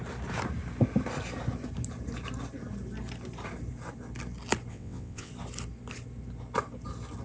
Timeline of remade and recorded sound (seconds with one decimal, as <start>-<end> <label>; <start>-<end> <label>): 0.0-4.7 recorded; 4.7-5.3 remade; 5.3-7.2 recorded